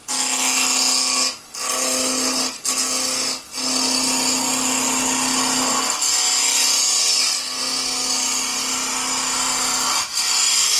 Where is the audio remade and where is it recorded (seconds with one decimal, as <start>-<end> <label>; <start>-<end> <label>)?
0.0-10.8 recorded